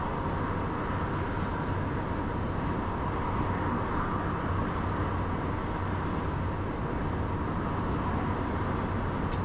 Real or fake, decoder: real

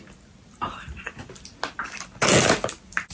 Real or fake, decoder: real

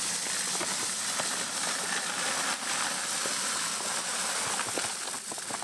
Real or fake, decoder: real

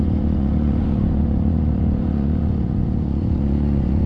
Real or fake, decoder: fake, vocoder, Vocos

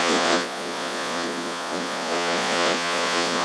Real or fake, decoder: fake, vocoder, Vocos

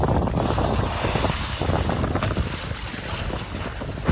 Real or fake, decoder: real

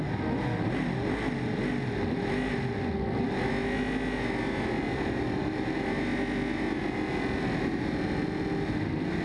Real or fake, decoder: real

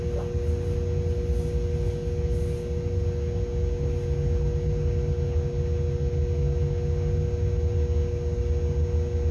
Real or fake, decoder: real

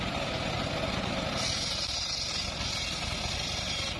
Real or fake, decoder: real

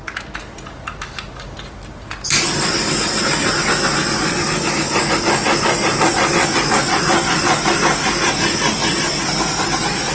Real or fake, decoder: real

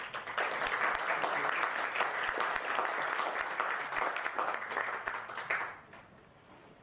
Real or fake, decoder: real